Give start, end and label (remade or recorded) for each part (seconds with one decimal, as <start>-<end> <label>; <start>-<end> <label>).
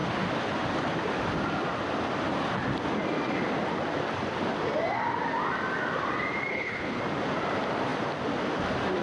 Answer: 0.0-6.5 recorded; 6.5-7.0 remade; 7.0-9.0 recorded